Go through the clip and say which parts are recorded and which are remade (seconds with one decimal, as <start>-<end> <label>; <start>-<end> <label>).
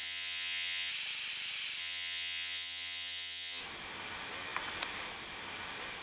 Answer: 0.0-0.9 remade; 0.9-1.8 recorded; 1.8-3.6 remade; 3.6-6.0 recorded